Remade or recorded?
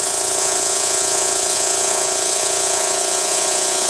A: remade